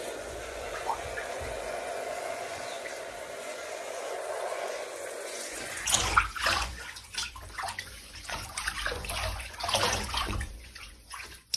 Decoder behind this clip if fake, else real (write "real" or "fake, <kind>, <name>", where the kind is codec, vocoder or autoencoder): fake, vocoder, Vocos